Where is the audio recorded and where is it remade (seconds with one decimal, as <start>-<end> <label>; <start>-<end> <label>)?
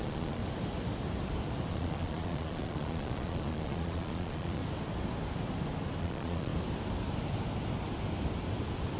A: 0.0-0.4 remade; 0.4-1.7 recorded; 1.7-4.6 remade; 4.6-6.0 recorded; 6.0-6.5 remade; 6.5-9.0 recorded